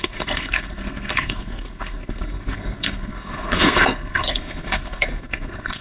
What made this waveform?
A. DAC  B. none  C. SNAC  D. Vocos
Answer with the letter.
C